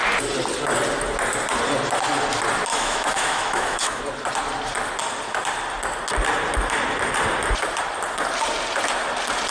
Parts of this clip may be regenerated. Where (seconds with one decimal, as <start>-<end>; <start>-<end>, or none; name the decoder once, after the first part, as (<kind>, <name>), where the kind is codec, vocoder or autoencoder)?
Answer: 2.7-4.0 (autoencoder, DAC-VAE)